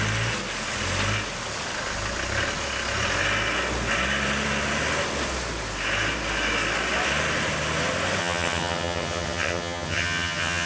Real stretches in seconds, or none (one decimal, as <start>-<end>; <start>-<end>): 0.0-8.2